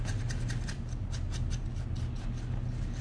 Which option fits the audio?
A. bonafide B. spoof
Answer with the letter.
A